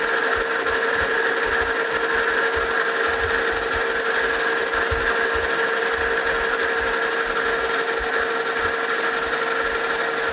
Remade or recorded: recorded